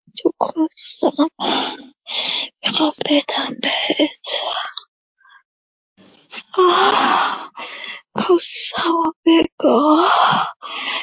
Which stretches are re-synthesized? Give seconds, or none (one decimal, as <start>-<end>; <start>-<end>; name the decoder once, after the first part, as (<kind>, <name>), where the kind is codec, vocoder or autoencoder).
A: 0.0-4.1 (codec, DAC); 5.0-8.6